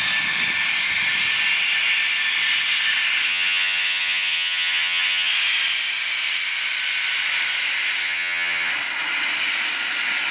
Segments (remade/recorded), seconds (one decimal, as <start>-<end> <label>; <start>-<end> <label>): 0.0-3.3 recorded; 3.3-5.3 remade; 5.3-8.0 recorded; 8.0-8.7 remade; 8.7-10.3 recorded